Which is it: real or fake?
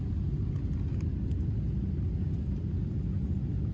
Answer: real